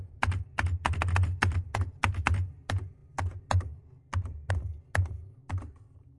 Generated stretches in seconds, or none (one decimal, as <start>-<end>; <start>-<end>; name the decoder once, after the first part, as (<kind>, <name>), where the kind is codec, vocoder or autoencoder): none